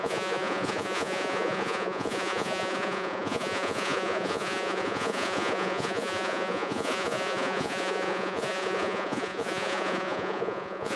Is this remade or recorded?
remade